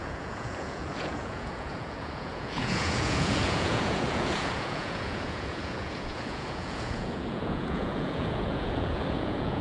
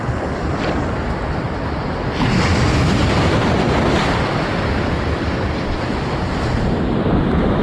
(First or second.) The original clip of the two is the second